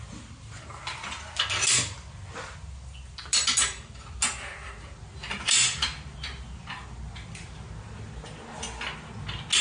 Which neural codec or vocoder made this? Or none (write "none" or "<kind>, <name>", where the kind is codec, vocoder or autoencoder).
none